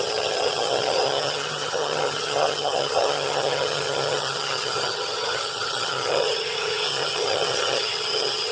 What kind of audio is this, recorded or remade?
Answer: remade